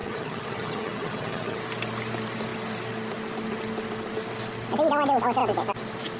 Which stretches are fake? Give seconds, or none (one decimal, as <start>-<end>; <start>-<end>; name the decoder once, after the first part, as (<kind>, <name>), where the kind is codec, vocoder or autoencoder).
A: 0.0-1.6 (vocoder, HiFi-GAN)